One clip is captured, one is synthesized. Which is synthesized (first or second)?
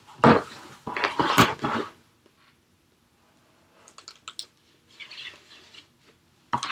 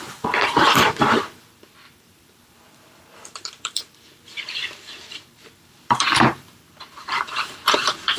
second